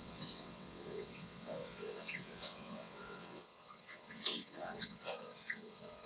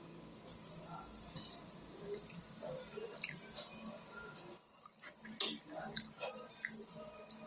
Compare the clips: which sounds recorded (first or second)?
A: second